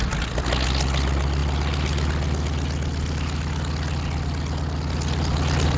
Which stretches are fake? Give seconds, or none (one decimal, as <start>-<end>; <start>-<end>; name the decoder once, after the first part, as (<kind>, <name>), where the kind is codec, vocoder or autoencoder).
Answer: none